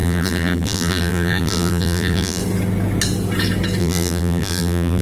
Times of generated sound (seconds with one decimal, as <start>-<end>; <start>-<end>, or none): 0.0-2.4; 3.8-5.0